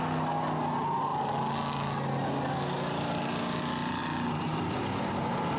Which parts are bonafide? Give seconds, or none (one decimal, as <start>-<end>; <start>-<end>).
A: 0.0-5.6